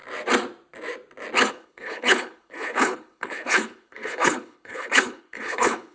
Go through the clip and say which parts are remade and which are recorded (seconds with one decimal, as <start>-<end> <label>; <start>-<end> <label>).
0.0-1.5 recorded; 1.5-5.9 remade